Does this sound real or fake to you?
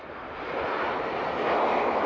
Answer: real